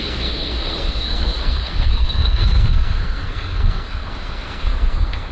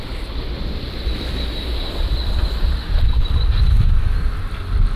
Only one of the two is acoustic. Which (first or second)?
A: second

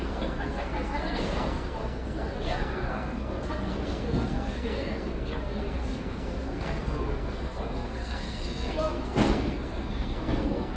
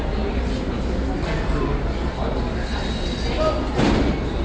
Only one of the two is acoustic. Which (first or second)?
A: second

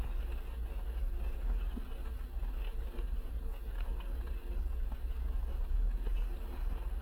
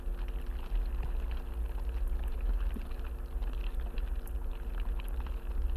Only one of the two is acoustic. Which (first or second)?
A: second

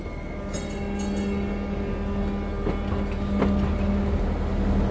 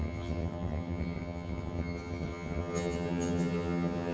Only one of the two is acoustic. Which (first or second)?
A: first